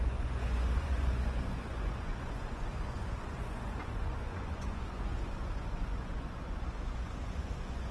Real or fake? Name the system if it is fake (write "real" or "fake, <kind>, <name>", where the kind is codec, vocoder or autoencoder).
fake, vocoder, Vocos